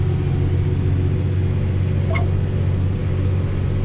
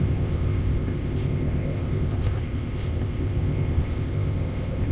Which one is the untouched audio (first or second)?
first